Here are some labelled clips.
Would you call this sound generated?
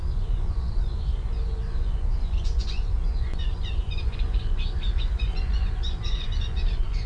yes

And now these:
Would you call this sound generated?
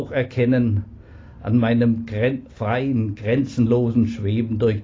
no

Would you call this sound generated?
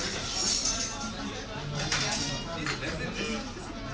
no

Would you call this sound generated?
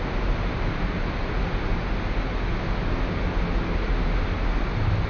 no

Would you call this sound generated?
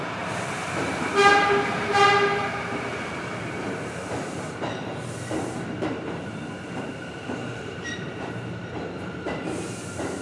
yes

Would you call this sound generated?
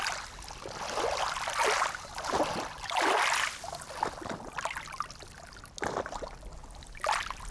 no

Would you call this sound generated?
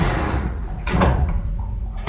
yes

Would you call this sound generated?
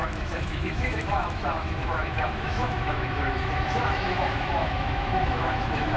yes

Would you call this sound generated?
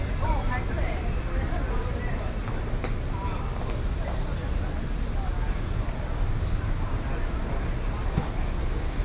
no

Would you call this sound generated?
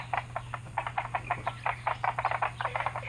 no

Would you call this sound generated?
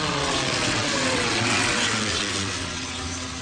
yes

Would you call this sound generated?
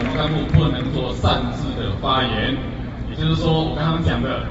no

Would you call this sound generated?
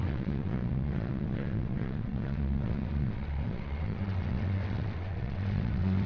yes